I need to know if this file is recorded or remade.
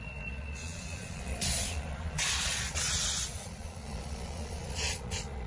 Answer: remade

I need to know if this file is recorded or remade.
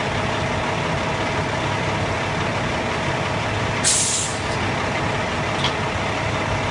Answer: recorded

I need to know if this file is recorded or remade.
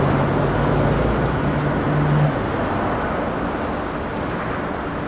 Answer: recorded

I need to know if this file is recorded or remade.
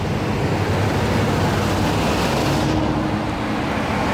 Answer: recorded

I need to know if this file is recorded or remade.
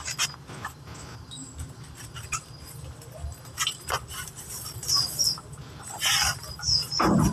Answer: recorded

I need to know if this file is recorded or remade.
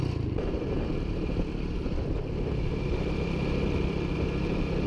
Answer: recorded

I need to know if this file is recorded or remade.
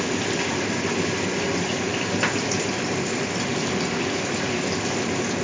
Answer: recorded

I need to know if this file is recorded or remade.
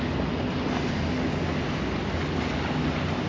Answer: recorded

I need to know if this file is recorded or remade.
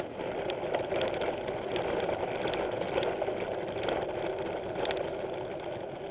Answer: recorded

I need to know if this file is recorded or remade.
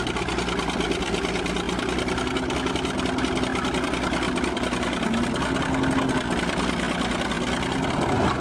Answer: recorded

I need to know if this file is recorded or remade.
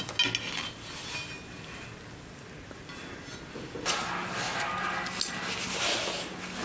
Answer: recorded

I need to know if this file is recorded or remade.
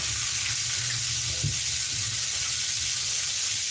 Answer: recorded